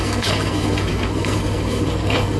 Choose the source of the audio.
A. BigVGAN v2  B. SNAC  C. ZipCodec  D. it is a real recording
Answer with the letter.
B